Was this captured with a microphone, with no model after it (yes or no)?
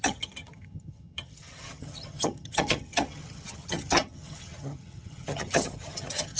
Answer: no